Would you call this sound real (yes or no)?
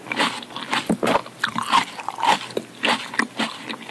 yes